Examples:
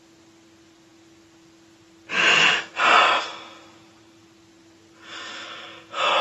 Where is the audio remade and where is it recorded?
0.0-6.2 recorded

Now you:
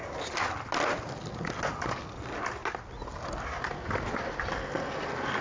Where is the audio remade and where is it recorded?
0.0-5.4 recorded

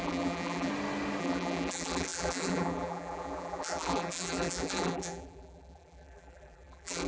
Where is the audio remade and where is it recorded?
0.0-0.7 remade; 0.7-1.2 recorded; 1.2-7.1 remade

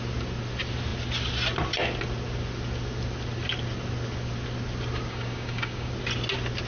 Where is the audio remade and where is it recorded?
0.0-5.1 recorded; 5.1-5.9 remade; 5.9-6.7 recorded

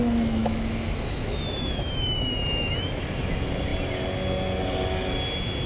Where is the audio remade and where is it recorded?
0.0-0.4 recorded; 0.4-3.0 remade; 3.0-5.7 recorded

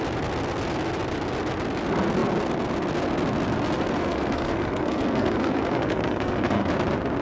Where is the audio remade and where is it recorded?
0.0-4.0 recorded; 4.0-6.7 remade; 6.7-7.2 recorded